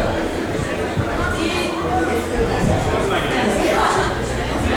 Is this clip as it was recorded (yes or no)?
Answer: no